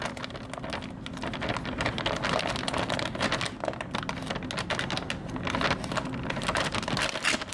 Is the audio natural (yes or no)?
yes